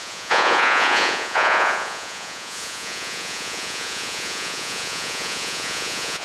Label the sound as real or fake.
fake